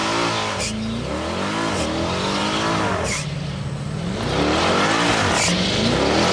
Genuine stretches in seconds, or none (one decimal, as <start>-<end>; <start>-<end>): 0.0-6.3